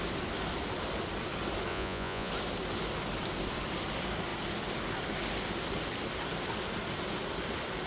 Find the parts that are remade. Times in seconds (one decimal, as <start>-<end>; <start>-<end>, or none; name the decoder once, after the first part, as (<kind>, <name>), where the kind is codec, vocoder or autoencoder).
1.7-2.3 (vocoder, Vocos)